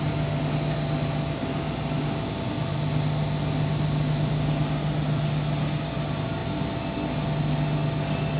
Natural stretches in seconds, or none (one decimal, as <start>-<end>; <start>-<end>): 0.0-8.4